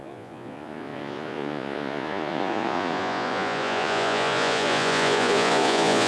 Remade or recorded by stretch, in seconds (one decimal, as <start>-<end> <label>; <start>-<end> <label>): 0.0-6.1 remade